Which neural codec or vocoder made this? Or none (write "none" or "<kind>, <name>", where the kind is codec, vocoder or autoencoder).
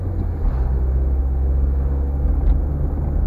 none